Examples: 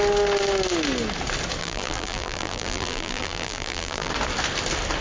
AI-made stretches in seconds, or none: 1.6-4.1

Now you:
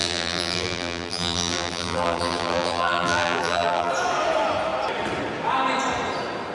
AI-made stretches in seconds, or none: 0.0-3.9

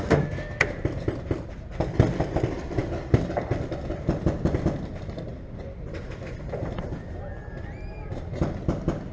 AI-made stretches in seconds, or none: none

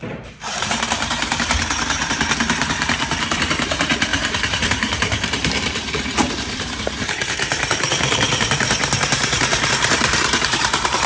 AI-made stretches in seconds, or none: 0.0-11.1

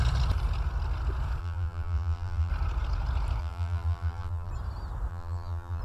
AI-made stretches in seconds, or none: 1.4-2.5; 3.4-4.5; 5.1-5.8